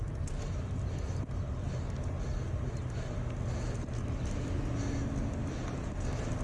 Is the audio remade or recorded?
recorded